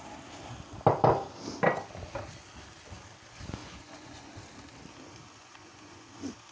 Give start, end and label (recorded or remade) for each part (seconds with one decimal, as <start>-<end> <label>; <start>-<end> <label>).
0.0-3.6 recorded; 3.6-4.3 remade; 4.3-5.4 recorded; 5.4-6.1 remade; 6.1-6.5 recorded